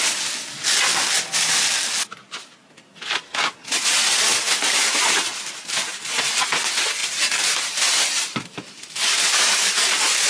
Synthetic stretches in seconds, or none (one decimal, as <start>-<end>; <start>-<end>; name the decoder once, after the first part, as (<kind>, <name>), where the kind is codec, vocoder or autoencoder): none